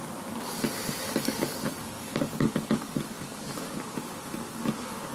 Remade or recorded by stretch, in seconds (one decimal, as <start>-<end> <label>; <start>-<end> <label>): 0.0-1.2 recorded; 1.2-5.1 remade